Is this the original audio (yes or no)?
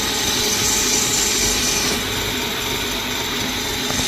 yes